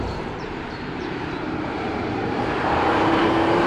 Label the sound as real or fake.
fake